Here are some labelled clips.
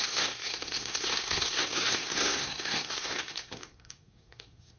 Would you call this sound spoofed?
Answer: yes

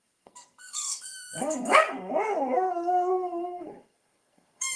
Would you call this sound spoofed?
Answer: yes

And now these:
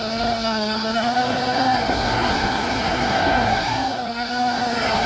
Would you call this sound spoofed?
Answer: yes